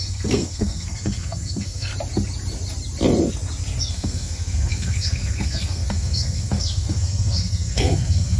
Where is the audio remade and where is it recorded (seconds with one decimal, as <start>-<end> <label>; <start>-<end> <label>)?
0.0-1.9 remade; 1.9-3.8 recorded; 3.8-8.4 remade